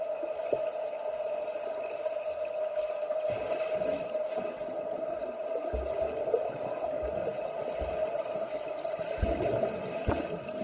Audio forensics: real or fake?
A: real